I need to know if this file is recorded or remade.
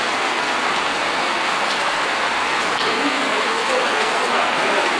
remade